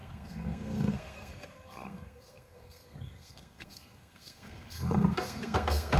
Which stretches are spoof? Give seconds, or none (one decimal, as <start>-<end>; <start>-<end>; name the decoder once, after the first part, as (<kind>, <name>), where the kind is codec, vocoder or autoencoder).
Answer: 0.0-6.0 (codec, SNAC)